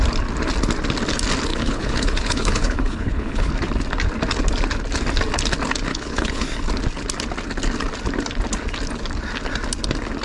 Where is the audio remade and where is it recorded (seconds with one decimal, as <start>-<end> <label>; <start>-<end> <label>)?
0.0-1.5 recorded; 1.5-3.5 remade; 3.5-5.9 recorded; 5.9-6.4 remade; 6.4-10.2 recorded